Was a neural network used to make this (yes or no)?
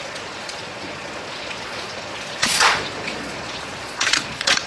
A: yes